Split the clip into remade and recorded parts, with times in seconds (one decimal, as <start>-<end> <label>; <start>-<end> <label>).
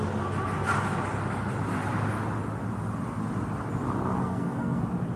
0.0-4.2 recorded; 4.2-4.8 remade; 4.8-5.2 recorded